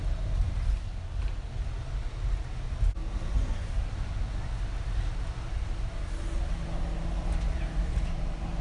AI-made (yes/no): no